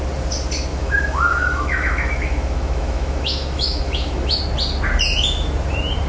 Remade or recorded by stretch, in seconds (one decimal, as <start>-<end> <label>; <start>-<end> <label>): 0.0-0.7 recorded; 0.7-4.4 remade; 4.4-6.1 recorded